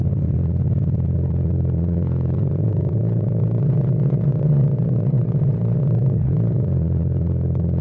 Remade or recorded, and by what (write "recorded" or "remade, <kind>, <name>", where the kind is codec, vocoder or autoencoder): remade, vocoder, Vocos